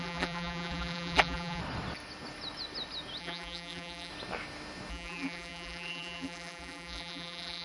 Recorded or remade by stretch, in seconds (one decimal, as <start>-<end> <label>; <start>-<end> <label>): 0.0-1.6 remade; 1.6-3.2 recorded; 3.2-4.1 remade; 4.1-4.9 recorded; 4.9-7.6 remade